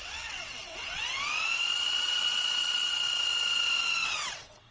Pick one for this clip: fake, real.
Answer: fake